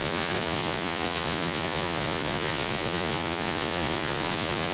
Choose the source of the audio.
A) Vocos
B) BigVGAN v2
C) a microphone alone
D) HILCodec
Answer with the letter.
A